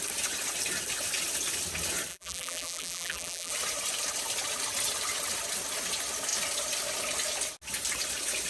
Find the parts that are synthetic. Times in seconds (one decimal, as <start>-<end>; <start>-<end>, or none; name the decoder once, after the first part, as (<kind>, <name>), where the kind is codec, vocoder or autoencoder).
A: 2.1-3.5 (vocoder, BigVGAN v2)